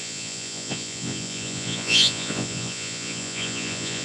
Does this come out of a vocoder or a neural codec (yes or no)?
yes